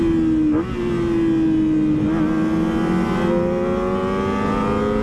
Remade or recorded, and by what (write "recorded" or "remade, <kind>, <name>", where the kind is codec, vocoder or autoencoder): recorded